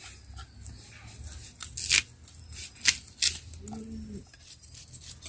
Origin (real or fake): real